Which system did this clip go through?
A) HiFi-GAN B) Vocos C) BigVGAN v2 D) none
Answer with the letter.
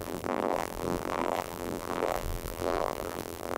C